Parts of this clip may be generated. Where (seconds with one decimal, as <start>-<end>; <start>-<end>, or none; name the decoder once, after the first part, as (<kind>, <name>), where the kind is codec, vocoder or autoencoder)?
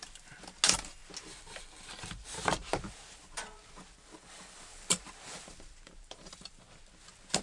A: 2.6-3.7 (vocoder, BigVGAN v2); 4.7-6.8